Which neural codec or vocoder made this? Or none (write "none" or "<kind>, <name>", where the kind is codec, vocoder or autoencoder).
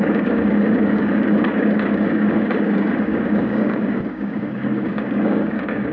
codec, DAC